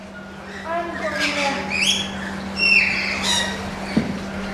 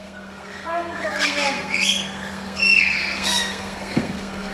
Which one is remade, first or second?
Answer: second